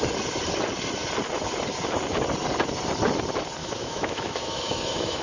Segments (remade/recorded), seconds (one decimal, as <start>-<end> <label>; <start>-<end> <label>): 0.0-3.6 recorded; 3.6-5.2 remade